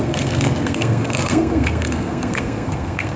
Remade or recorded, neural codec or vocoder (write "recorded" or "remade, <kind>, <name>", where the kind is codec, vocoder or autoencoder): remade, codec, SNAC